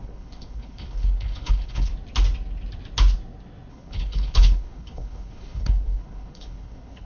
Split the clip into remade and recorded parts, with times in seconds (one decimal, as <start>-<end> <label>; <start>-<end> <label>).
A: 0.0-1.9 remade; 1.9-3.7 recorded; 3.7-7.0 remade